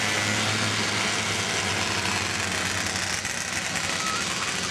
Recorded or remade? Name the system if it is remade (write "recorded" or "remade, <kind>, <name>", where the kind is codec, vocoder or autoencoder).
recorded